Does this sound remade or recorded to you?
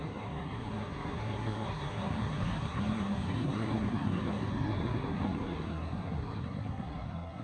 remade